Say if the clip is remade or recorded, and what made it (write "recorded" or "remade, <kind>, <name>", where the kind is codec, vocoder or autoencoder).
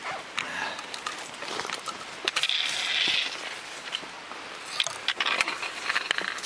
recorded